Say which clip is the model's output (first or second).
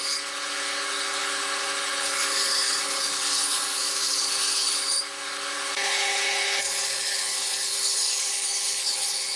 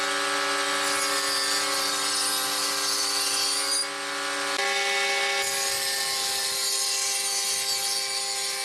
first